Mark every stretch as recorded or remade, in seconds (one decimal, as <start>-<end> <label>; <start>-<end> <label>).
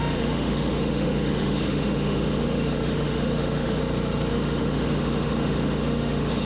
0.0-3.8 remade; 3.8-4.3 recorded; 4.3-6.5 remade